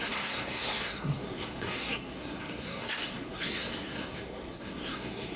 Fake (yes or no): yes